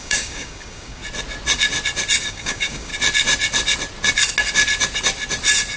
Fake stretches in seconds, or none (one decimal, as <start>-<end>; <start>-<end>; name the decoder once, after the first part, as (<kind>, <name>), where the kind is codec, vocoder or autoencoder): 0.0-1.0 (codec, DAC); 2.2-2.9